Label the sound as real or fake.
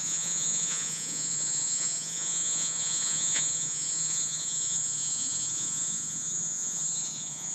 fake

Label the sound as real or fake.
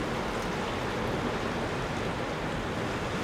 real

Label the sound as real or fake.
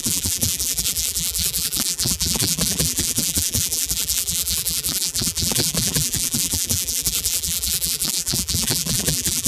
fake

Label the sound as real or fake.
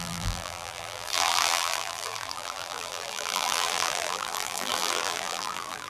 fake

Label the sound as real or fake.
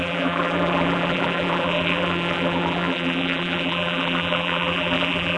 fake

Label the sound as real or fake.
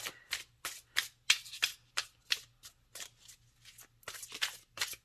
real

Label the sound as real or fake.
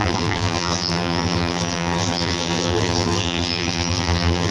fake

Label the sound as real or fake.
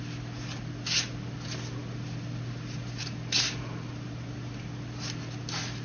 real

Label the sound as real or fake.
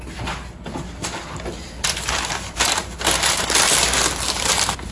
real